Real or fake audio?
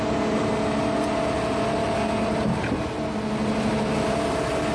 real